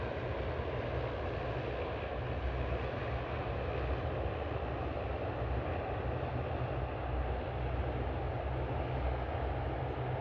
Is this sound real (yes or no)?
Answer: yes